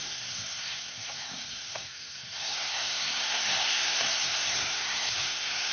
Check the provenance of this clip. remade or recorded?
remade